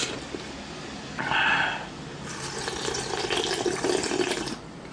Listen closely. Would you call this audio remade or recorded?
recorded